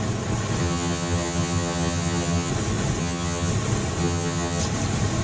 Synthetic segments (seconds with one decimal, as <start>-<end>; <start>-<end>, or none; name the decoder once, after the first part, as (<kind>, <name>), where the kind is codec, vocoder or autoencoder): 0.6-2.5 (vocoder, HiFi-GAN); 3.0-3.5; 4.0-4.6